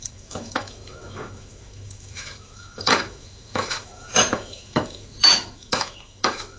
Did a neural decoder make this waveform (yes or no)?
yes